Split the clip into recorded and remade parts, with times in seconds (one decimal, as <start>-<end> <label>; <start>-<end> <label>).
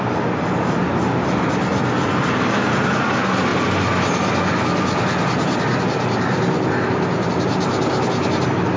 0.0-8.8 recorded